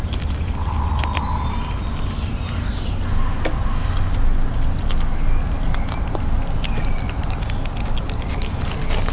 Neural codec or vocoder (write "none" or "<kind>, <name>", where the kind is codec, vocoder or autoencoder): none